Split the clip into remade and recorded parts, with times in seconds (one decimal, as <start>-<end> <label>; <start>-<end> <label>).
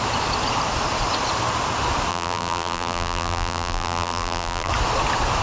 0.0-2.1 recorded; 2.1-4.7 remade; 4.7-5.4 recorded